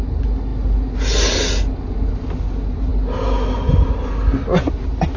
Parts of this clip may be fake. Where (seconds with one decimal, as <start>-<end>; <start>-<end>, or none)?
none